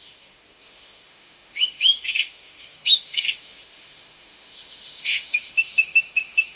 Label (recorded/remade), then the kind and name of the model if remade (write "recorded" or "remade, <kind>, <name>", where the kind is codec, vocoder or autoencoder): remade, autoencoder, DAC-VAE